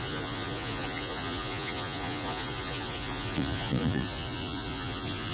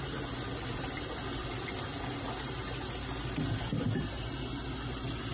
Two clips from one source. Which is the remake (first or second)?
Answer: first